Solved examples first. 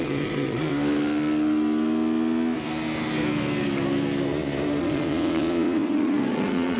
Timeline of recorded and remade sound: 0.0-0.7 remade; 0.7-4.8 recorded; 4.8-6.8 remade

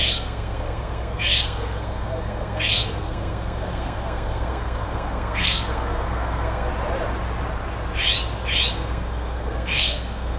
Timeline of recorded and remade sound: 0.0-6.7 remade; 6.7-8.7 recorded; 8.7-10.4 remade

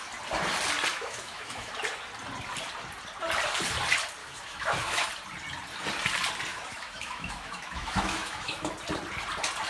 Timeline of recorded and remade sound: 0.0-0.9 recorded; 0.9-1.7 remade; 1.7-4.2 recorded; 4.2-5.1 remade; 5.1-6.5 recorded; 6.5-8.7 remade; 8.7-9.7 recorded

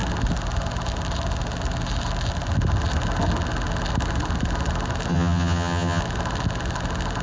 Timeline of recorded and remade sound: 0.0-5.1 recorded; 5.1-6.0 remade; 6.0-7.2 recorded

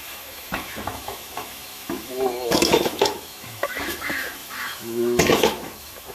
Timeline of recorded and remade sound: 0.0-6.1 remade